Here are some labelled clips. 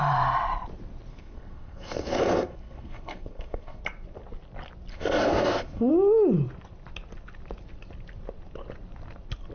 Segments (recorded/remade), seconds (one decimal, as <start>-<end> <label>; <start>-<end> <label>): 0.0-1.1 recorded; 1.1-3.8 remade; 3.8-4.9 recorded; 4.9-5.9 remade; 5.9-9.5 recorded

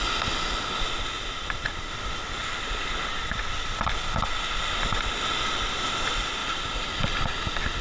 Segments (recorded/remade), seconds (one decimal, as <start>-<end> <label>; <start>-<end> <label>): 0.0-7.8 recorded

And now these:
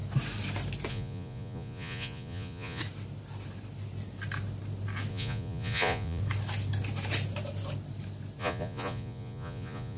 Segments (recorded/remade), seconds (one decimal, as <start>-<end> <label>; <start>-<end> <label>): 0.0-0.9 recorded; 0.9-2.8 remade; 2.8-5.1 recorded; 5.1-6.2 remade; 6.2-8.4 recorded; 8.4-10.0 remade